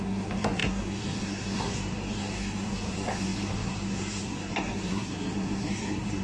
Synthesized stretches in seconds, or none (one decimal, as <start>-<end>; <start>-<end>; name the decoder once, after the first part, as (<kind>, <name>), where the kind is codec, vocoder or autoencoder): 0.0-6.2 (codec, SNAC)